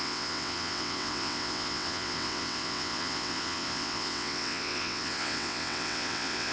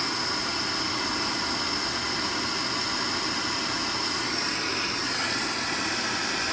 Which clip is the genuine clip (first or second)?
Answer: second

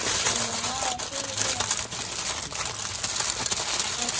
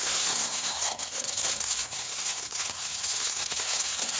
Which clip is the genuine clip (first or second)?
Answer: first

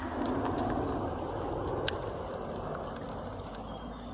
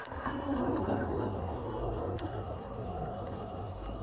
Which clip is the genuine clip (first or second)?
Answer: first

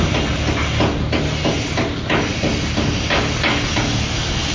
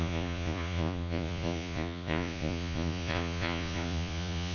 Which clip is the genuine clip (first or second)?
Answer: first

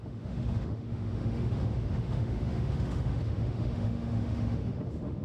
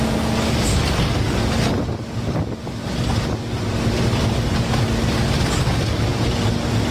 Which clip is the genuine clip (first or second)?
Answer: second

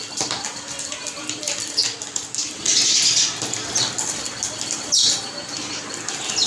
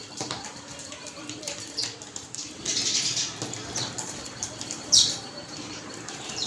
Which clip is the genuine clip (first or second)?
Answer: first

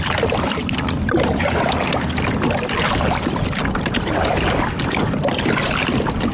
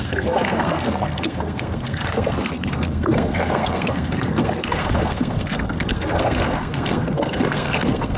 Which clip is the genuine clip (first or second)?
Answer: first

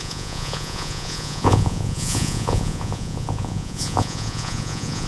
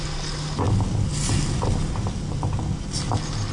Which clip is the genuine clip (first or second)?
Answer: second